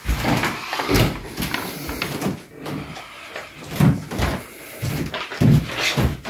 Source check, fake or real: real